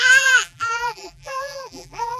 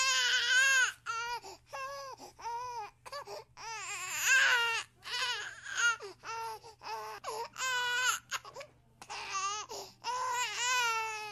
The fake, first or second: first